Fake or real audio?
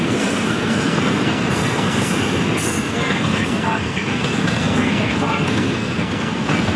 fake